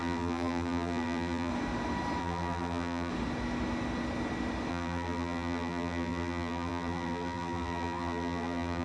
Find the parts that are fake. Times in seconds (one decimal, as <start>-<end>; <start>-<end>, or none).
0.0-1.5; 2.2-3.1; 4.7-8.8